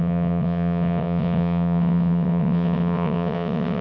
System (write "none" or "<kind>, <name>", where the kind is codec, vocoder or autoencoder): vocoder, WaveNeXt